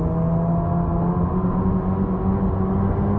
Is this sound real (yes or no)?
yes